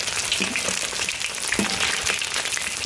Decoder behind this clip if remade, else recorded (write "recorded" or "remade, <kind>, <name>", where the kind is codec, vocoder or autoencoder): recorded